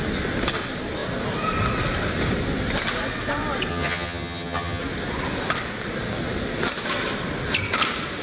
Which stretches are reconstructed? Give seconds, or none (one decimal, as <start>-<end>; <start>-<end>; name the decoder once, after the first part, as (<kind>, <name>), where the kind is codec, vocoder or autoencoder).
3.7-4.8 (vocoder, HiFi-GAN)